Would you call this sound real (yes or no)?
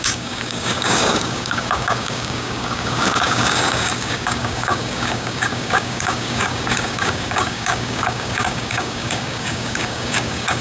no